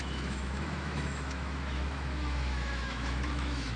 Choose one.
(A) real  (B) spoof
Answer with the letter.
B